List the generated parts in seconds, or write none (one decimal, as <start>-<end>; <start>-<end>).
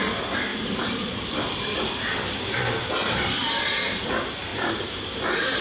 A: 0.5-1.8; 3.0-4.0; 4.5-5.6